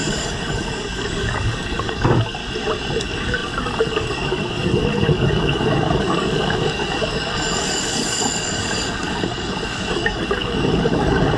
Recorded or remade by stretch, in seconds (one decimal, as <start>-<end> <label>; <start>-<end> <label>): 0.0-2.4 remade; 2.4-3.0 recorded; 3.0-11.4 remade